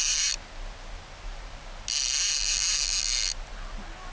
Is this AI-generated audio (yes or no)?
no